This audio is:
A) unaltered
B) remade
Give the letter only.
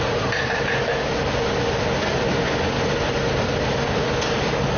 A